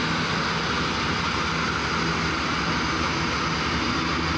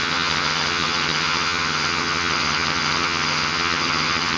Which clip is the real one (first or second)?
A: first